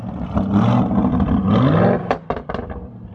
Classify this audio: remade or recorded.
recorded